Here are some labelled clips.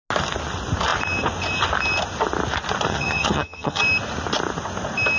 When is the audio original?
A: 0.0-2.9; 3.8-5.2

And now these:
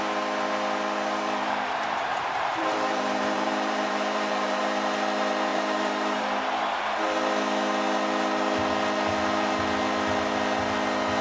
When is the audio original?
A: 0.0-2.1; 4.6-5.5; 6.4-11.2

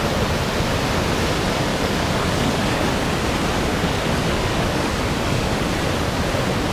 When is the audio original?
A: 0.0-1.7; 3.0-3.7; 5.6-6.7

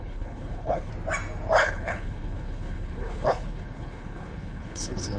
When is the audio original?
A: 0.9-1.6

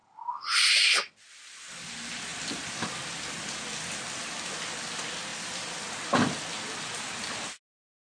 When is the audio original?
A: 0.0-8.1

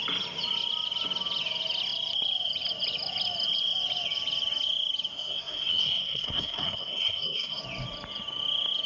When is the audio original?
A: 0.0-5.1; 7.6-8.9